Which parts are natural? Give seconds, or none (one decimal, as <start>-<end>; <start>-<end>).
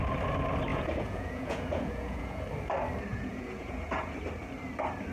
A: 0.0-0.7; 2.4-3.1; 4.2-5.1